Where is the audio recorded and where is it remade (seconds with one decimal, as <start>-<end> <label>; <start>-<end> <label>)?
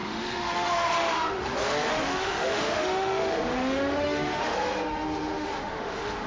0.0-6.3 remade